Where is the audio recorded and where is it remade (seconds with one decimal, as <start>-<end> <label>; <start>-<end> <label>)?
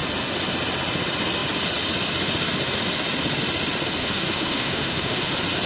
0.0-4.0 recorded; 4.0-5.3 remade; 5.3-5.7 recorded